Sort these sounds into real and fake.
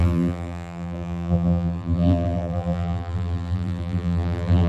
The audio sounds fake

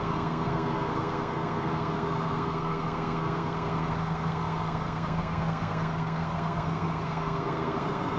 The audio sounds fake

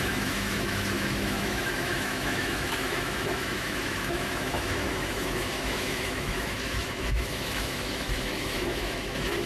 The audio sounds fake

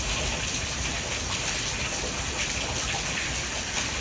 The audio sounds real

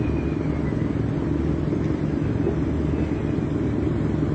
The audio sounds real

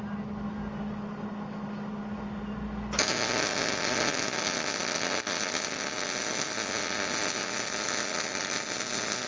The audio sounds real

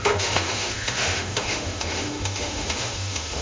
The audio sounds fake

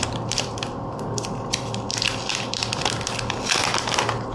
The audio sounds real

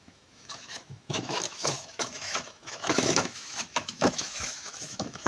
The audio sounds fake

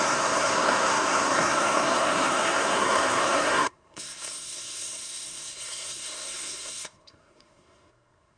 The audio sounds fake